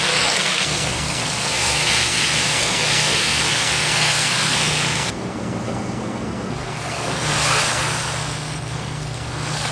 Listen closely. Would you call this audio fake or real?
fake